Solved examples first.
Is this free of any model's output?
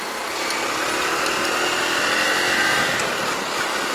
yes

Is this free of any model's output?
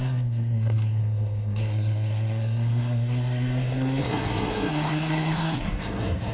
no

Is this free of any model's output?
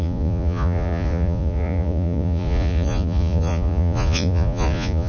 no